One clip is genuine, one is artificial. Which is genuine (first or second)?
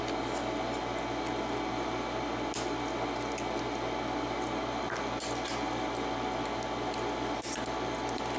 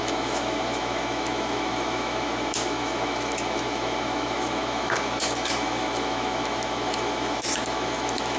first